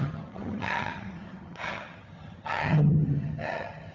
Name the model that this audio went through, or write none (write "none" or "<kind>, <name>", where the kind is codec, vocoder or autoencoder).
vocoder, HiFi-GAN